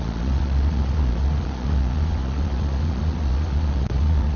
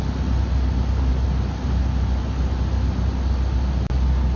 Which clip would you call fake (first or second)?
first